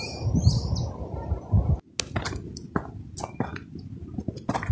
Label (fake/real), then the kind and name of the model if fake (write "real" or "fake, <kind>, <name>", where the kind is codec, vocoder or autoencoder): real